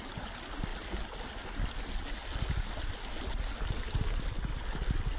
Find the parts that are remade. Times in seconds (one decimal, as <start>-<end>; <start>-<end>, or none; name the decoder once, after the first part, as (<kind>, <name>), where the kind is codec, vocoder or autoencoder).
none